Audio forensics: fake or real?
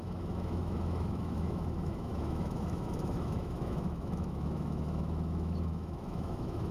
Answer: fake